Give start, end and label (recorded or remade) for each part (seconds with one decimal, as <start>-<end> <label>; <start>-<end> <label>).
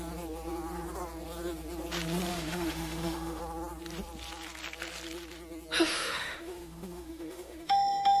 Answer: 0.0-2.3 recorded; 2.3-3.4 remade; 3.4-5.9 recorded; 5.9-8.2 remade